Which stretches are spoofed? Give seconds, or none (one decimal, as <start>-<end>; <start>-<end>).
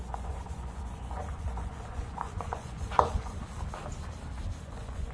0.0-3.4; 4.6-5.1